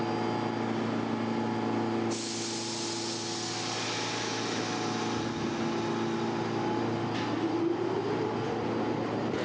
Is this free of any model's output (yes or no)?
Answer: yes